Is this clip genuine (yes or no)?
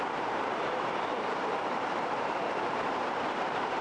no